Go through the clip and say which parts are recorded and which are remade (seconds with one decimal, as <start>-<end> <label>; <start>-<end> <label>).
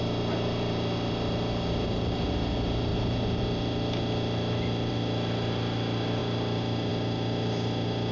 0.0-8.1 recorded